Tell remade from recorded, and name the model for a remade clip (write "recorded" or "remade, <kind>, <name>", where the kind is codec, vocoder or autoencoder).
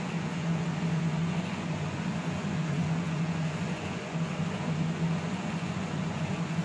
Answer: remade, vocoder, Vocos